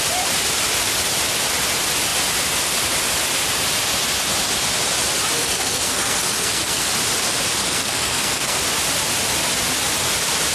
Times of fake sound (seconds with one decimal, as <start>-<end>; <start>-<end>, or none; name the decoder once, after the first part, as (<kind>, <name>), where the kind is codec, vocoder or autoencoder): 5.4-6.9 (codec, SNAC); 7.6-8.6